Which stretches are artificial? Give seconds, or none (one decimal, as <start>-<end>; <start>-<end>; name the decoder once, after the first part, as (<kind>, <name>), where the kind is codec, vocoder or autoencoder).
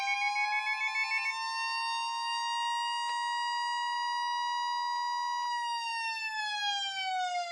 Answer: none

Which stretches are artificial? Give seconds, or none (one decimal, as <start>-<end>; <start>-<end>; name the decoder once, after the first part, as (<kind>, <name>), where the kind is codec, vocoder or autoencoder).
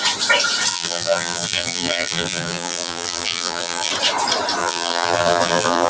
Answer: 0.7-3.9 (vocoder, BigVGAN v2); 4.6-5.9